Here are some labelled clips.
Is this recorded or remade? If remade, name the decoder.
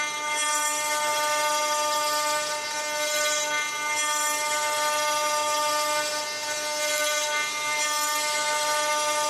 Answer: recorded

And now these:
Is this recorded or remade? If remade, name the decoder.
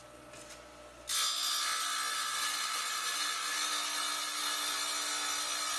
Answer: recorded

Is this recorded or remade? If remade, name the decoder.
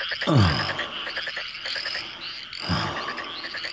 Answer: recorded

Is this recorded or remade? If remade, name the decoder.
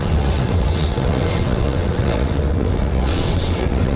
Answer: remade, vocoder, WaveNeXt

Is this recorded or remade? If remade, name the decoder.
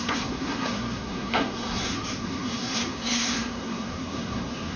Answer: remade, codec, SNAC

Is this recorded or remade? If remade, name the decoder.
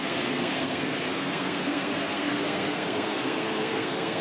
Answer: remade, codec, SNAC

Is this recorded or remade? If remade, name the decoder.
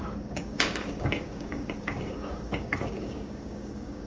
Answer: remade, codec, DAC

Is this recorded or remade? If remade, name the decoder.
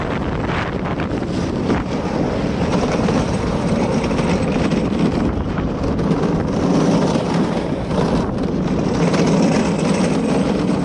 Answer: remade, vocoder, BigVGAN v2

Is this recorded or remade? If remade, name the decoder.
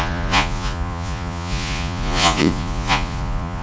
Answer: remade, vocoder, Vocos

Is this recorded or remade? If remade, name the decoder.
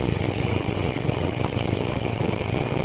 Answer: remade, vocoder, WaveNeXt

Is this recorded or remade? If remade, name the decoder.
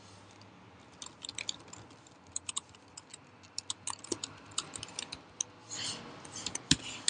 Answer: recorded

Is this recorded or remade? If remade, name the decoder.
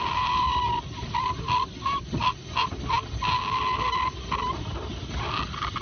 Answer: recorded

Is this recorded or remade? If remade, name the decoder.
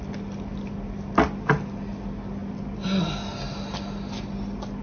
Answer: recorded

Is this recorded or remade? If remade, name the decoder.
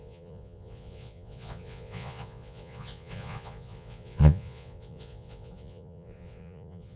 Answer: remade, vocoder, Vocos